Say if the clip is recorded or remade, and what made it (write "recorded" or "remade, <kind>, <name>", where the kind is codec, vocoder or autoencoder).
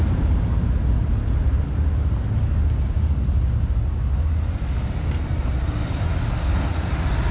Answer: recorded